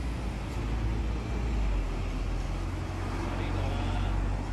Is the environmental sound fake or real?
real